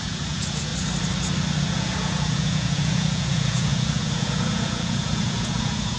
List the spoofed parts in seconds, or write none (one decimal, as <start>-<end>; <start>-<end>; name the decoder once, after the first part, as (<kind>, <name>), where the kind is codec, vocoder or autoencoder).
0.0-0.7 (vocoder, Vocos); 1.6-6.0